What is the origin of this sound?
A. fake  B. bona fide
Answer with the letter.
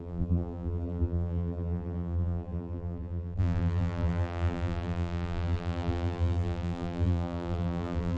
A